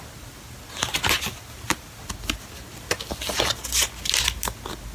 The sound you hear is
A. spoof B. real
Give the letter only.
B